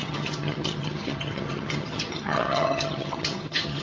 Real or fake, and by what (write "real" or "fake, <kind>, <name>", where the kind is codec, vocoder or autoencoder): fake, vocoder, HiFi-GAN